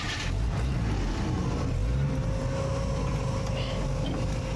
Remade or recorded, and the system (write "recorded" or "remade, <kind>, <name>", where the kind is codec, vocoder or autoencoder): recorded